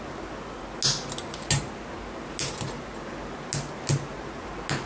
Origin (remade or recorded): recorded